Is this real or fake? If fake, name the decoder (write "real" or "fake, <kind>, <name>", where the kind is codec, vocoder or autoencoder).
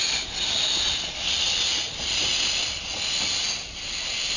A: real